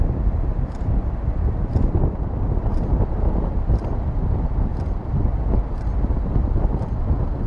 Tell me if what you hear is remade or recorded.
recorded